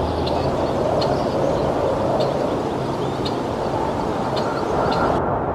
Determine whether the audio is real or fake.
real